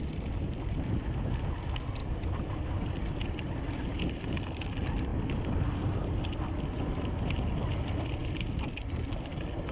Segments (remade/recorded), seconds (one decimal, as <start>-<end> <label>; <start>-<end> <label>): 0.0-2.0 recorded; 2.0-4.2 remade; 4.2-5.1 recorded; 5.1-6.3 remade; 6.3-9.7 recorded